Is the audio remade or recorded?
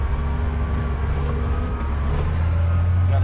recorded